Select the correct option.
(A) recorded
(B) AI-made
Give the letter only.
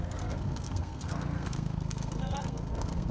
B